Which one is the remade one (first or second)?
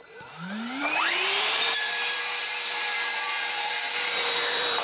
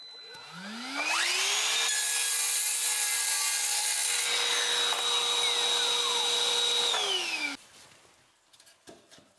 first